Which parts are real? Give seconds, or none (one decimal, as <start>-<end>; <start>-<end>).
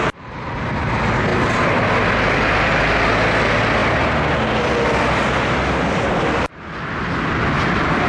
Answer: 0.0-8.1